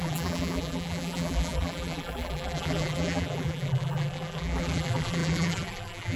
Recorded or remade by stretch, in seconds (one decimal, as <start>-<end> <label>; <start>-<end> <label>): 0.0-6.2 remade